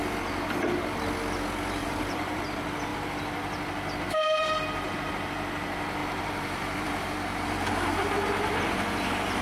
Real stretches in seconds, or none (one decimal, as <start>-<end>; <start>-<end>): 0.0-1.8; 2.4-6.0; 7.7-9.4